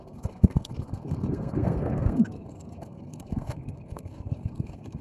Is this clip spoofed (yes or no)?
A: yes